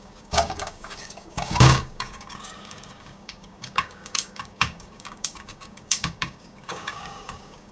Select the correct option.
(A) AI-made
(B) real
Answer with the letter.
A